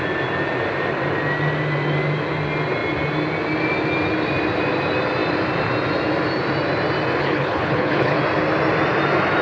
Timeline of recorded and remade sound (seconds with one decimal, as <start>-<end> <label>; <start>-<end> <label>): 0.0-7.2 recorded; 7.2-8.2 remade; 8.2-9.4 recorded